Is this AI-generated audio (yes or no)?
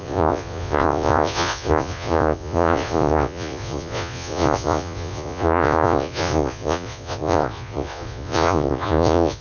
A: yes